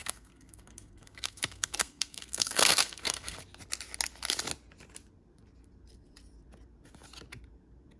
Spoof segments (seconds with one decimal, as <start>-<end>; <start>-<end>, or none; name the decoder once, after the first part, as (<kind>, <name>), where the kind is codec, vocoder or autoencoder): 0.0-3.4 (codec, SNAC)